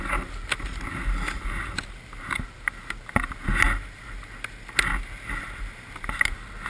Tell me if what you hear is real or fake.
real